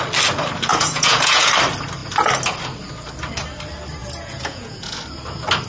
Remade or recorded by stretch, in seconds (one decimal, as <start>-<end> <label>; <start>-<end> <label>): 0.0-0.7 recorded; 0.7-1.5 remade; 1.5-4.0 recorded; 4.0-5.0 remade; 5.0-5.7 recorded